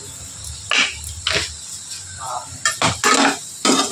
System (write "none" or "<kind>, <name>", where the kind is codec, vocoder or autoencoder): none